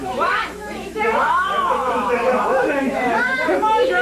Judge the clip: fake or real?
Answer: fake